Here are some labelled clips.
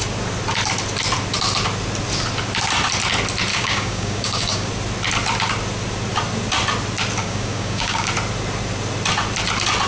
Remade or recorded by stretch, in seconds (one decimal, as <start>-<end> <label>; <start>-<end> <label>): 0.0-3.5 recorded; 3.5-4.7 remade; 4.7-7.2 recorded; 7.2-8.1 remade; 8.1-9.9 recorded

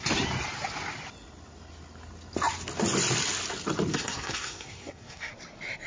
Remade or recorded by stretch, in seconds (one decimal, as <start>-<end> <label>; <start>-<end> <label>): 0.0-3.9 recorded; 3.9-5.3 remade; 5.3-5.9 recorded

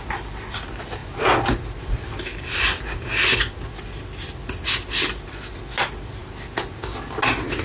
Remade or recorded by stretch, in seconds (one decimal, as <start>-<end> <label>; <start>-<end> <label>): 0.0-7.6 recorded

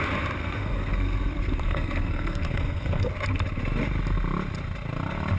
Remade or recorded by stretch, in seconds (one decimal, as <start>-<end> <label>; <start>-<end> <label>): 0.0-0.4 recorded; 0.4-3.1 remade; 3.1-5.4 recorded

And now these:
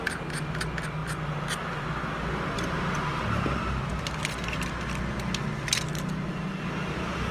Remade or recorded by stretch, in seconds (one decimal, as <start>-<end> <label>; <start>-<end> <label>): 0.0-7.3 recorded